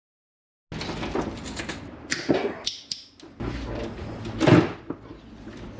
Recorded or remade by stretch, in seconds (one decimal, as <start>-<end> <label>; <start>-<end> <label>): 0.0-5.8 recorded